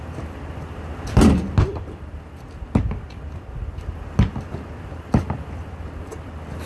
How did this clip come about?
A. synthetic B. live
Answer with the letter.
B